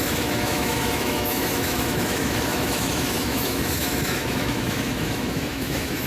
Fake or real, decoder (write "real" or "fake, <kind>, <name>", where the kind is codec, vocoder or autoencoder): fake, autoencoder, DAC-VAE